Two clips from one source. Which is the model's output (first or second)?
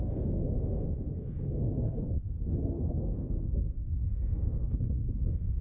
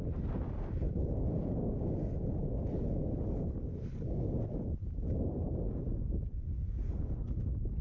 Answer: first